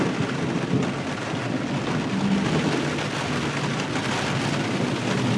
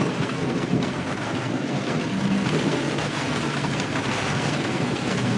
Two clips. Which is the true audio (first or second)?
first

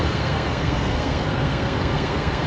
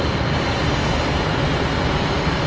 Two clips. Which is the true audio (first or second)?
second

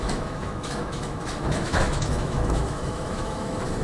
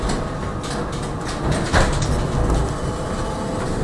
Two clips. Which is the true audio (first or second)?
second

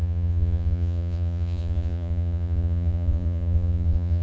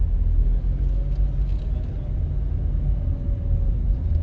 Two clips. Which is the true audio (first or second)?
second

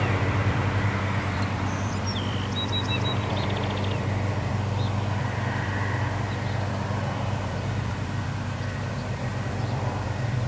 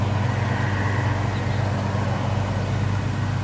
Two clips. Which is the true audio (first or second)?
second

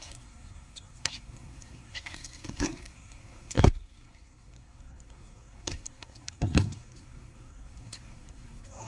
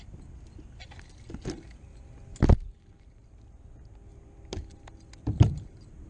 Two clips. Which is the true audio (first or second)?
second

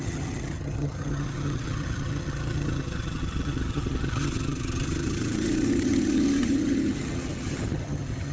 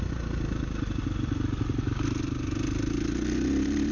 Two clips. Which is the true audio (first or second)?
second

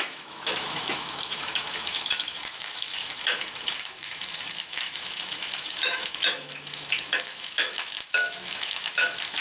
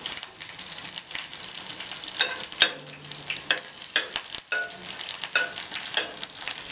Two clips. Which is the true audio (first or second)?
second